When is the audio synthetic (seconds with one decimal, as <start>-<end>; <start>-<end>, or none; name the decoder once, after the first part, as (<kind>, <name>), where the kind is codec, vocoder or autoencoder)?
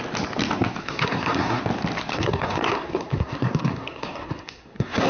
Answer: 0.8-1.6 (codec, SNAC); 2.1-5.1